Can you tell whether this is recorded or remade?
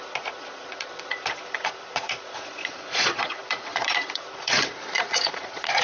remade